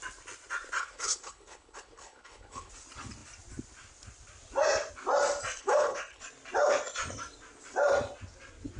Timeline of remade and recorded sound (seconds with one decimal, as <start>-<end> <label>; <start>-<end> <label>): 0.0-0.8 recorded; 0.8-2.7 remade; 2.7-5.6 recorded; 5.6-6.2 remade; 6.2-8.8 recorded